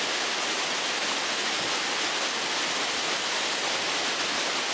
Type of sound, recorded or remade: recorded